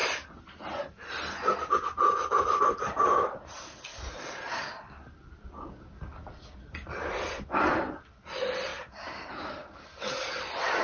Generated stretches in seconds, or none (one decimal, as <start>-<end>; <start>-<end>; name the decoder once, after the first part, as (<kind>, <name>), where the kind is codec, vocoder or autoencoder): none